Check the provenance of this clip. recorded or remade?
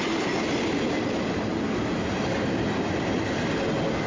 recorded